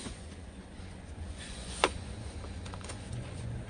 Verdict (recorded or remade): remade